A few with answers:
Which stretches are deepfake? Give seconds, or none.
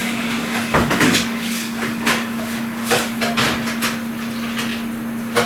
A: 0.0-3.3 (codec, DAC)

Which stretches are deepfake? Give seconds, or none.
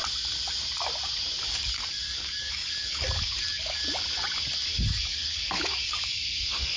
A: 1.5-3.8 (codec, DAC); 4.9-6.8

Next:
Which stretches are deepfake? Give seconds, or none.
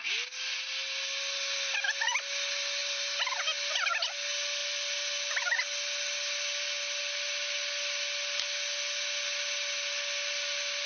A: none